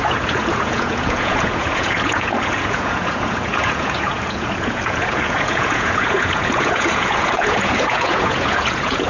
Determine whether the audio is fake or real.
fake